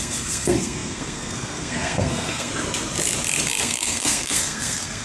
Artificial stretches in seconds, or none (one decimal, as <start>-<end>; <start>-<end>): 0.0-2.5; 3.6-5.0